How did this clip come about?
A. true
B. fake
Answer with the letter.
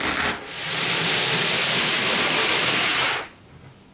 A